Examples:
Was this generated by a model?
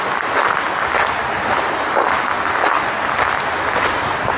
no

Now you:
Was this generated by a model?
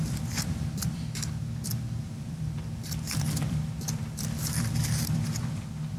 yes